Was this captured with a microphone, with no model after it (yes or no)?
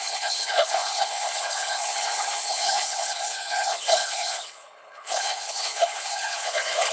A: no